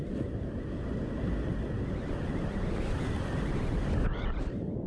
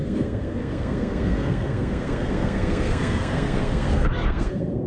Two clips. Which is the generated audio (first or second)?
second